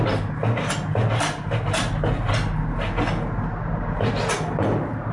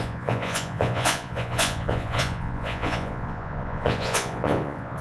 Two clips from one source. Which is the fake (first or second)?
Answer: second